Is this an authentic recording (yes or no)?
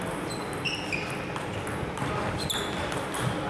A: yes